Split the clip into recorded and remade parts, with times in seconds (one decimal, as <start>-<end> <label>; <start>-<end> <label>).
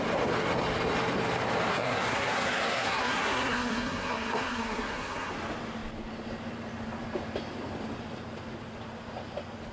0.0-1.7 recorded; 1.7-5.3 remade; 5.3-9.7 recorded